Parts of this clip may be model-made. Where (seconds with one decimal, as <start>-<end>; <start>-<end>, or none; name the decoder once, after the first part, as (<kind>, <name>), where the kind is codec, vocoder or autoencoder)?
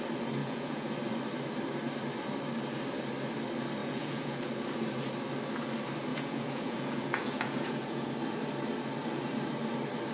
0.4-0.9 (vocoder, Vocos); 3.8-4.5; 6.1-8.1